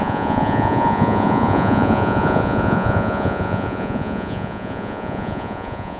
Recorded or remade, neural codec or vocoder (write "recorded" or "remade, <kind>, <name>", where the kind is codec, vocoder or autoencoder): remade, vocoder, Vocos